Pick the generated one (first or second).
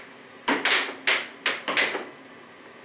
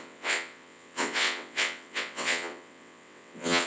second